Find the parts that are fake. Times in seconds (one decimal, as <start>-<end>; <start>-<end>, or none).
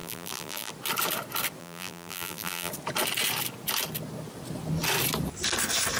0.0-0.7; 1.6-2.7